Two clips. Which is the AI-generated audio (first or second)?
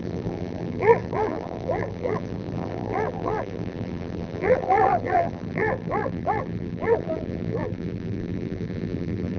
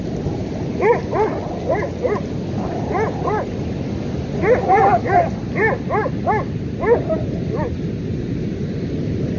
first